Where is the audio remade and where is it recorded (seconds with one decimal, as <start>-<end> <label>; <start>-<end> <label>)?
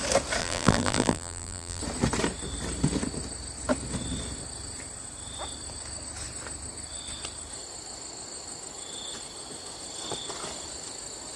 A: 0.0-0.4 recorded; 0.4-1.8 remade; 1.8-11.4 recorded